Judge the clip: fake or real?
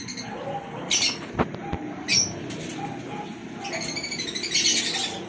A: real